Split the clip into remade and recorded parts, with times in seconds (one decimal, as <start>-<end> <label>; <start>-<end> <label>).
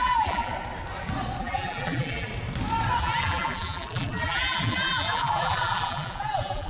0.0-0.5 remade; 0.5-1.4 recorded; 1.4-2.3 remade; 2.3-3.0 recorded; 3.0-6.7 remade